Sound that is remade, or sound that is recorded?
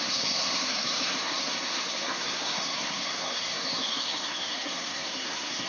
remade